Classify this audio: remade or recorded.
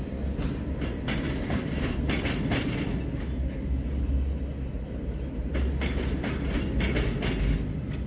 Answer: recorded